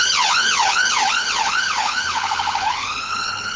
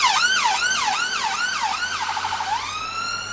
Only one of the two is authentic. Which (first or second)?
second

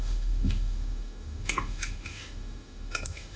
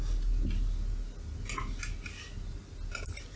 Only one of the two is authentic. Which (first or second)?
second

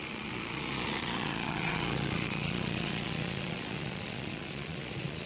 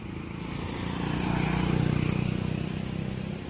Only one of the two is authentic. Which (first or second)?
second